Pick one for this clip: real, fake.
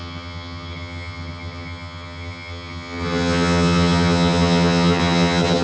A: fake